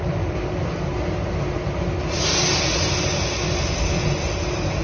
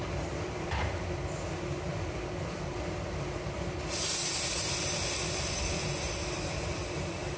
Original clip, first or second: first